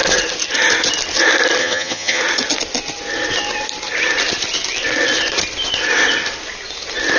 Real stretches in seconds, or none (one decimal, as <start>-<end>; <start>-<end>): 0.0-1.6; 2.2-7.2